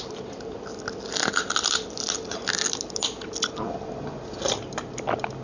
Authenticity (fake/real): real